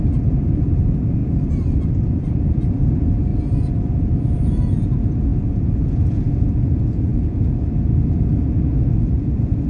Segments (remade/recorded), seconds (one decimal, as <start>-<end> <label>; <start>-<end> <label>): 0.0-9.7 remade